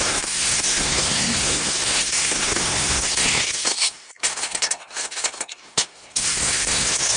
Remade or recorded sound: remade